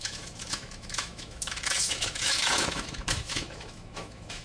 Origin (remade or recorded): remade